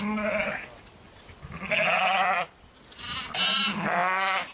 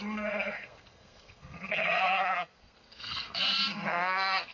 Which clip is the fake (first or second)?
second